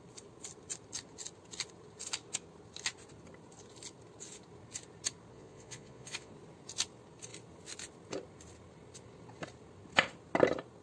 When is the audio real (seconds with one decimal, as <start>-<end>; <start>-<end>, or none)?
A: 0.0-5.3; 6.3-10.8